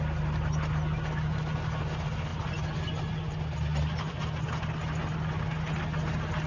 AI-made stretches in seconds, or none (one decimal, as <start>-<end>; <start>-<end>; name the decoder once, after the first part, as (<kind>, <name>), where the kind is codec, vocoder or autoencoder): none